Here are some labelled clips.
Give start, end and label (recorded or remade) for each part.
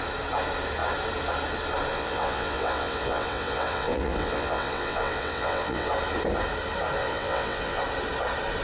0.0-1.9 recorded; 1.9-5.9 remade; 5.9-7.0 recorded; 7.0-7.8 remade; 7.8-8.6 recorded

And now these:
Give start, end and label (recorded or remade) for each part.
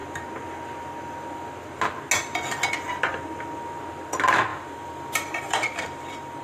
0.0-4.5 recorded; 4.5-6.4 remade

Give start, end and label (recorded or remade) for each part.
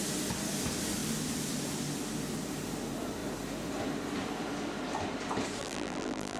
0.0-5.6 recorded; 5.6-6.4 remade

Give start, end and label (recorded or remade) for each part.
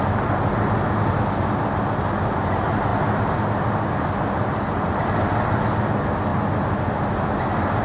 0.0-7.8 recorded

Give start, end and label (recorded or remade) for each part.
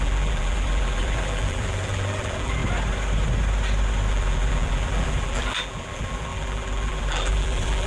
0.0-2.6 remade; 2.6-4.1 recorded; 4.1-7.9 remade